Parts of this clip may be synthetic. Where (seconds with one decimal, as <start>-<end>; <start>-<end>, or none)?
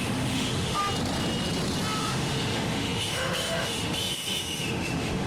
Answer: 0.0-0.8; 2.0-5.3